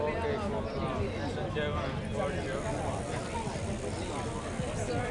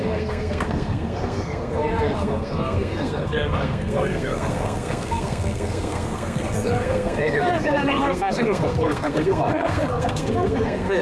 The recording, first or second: first